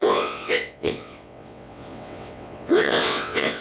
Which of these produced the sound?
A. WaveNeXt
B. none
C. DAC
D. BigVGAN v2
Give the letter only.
A